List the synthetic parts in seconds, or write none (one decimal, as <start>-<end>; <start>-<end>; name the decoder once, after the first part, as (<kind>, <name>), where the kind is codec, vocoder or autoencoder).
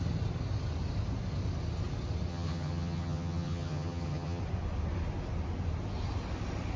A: 2.3-4.4 (vocoder, HiFi-GAN)